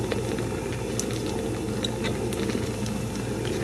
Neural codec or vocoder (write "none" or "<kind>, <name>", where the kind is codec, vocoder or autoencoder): none